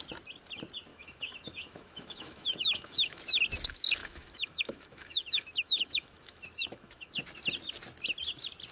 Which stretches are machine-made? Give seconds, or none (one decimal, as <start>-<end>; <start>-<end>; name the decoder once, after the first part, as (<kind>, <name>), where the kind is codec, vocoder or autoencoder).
0.9-3.2 (autoencoder, DAC-VAE); 4.0-7.1